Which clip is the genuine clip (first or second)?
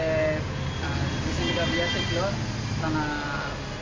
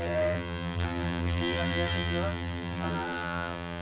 first